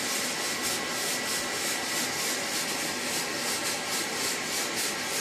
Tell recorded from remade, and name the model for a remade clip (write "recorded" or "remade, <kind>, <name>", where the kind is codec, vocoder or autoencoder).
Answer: recorded